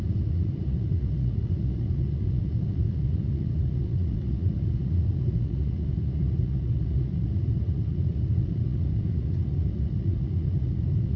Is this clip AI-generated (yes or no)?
yes